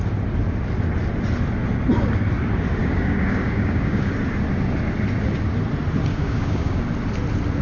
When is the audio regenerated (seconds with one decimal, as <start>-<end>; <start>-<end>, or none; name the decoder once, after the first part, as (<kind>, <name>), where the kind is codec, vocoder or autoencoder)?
2.8-4.1 (codec, DAC); 6.1-6.8